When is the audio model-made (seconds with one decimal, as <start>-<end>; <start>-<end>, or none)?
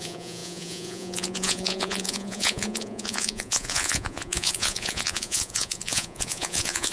0.0-6.9